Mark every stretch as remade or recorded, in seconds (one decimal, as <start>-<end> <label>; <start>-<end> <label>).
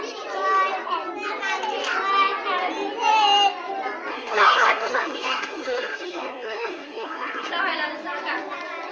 0.0-4.1 recorded; 4.1-7.5 remade; 7.5-8.9 recorded